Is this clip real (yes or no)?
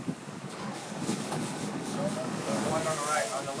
no